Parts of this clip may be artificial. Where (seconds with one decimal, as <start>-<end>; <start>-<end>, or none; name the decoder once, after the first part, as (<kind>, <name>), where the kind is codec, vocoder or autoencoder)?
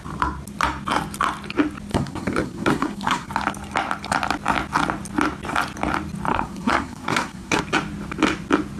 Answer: 1.9-3.3 (codec, SNAC); 6.3-7.6